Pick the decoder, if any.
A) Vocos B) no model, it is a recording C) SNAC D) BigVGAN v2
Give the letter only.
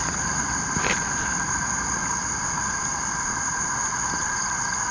B